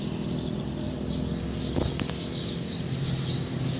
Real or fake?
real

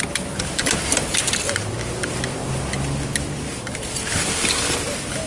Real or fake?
real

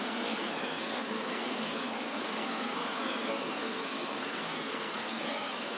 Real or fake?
fake